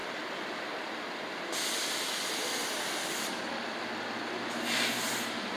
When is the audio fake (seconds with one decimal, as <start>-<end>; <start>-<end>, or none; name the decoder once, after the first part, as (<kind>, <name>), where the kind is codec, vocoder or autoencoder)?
0.0-3.4 (vocoder, BigVGAN v2)